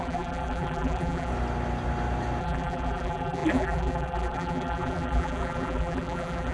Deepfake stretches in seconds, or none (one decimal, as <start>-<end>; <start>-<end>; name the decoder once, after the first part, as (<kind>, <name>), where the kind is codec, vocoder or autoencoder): 0.0-1.3 (vocoder, BigVGAN v2); 2.4-6.5